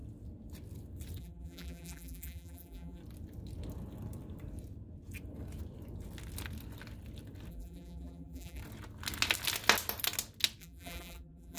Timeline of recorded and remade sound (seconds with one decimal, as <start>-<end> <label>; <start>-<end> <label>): 0.0-1.2 recorded; 1.2-3.0 remade; 3.0-7.5 recorded; 7.5-8.6 remade; 8.6-10.6 recorded; 10.6-11.6 remade